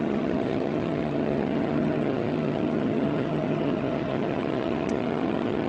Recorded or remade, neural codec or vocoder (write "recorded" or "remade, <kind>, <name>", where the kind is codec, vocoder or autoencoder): remade, vocoder, HiFi-GAN